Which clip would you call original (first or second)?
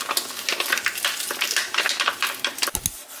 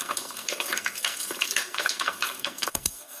first